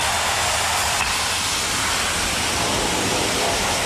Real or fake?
real